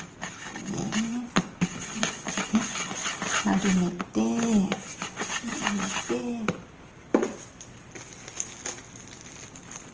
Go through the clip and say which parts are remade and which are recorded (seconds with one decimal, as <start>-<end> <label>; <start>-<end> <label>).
0.0-1.8 recorded; 1.8-3.1 remade; 3.1-4.9 recorded; 4.9-5.6 remade; 5.6-9.9 recorded